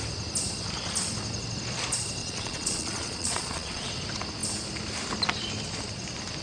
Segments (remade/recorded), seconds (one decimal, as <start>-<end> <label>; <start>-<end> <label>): 0.0-2.2 recorded; 2.2-3.9 remade; 3.9-6.4 recorded